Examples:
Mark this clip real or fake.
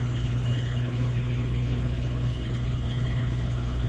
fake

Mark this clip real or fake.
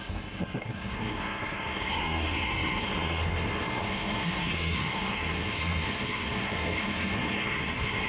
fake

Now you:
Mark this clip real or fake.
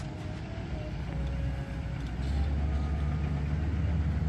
real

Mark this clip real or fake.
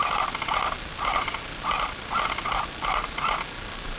real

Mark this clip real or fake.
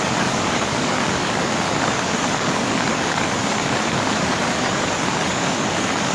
fake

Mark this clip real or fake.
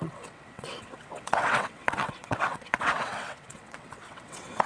fake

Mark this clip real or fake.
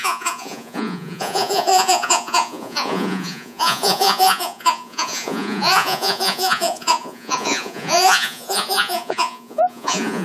fake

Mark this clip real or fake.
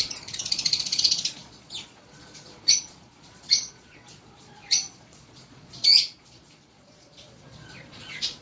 fake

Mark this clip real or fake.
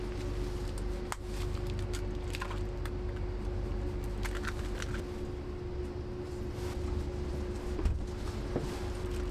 real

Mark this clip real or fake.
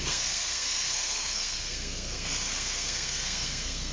fake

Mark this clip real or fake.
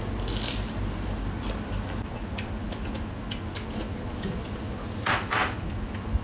real